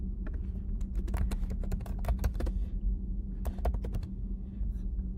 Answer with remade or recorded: recorded